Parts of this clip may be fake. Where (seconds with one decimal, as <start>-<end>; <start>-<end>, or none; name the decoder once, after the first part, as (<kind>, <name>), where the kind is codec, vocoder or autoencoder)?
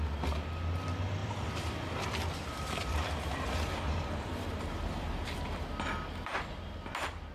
1.2-5.6 (vocoder, BigVGAN v2)